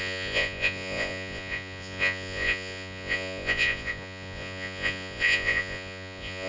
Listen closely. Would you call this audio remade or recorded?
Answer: remade